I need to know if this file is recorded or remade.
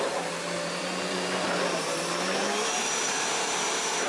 remade